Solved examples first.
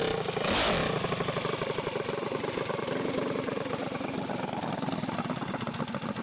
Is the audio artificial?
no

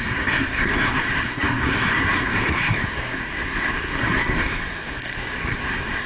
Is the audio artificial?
yes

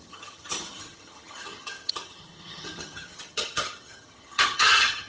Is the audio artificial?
yes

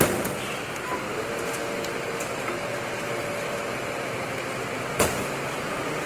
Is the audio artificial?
no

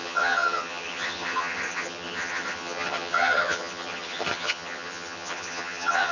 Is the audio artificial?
yes